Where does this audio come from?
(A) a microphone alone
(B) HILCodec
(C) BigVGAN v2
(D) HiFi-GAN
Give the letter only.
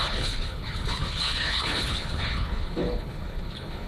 B